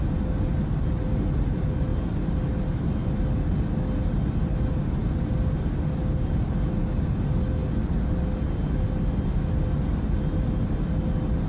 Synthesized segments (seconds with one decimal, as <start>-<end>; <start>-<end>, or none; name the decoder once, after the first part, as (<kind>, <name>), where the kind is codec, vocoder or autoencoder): none

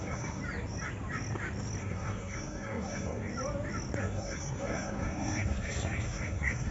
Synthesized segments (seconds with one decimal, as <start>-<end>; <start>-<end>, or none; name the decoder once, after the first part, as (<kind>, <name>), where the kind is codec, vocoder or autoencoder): 0.0-0.4 (codec, SNAC); 1.8-3.3; 4.0-6.7

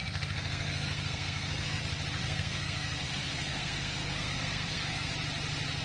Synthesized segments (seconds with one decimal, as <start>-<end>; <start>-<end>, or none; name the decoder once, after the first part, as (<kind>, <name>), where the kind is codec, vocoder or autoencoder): 0.0-1.8 (codec, SNAC); 2.2-5.1

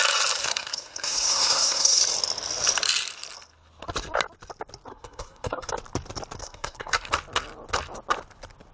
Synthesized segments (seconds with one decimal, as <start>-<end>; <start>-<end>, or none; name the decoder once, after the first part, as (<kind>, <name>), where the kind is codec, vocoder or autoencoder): 0.4-2.0 (codec, SNAC); 4.9-5.7; 6.4-7.1

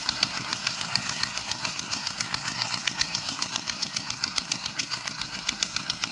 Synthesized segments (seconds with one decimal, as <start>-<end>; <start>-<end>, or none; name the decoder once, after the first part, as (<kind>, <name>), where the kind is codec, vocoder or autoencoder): 0.0-6.1 (codec, SNAC)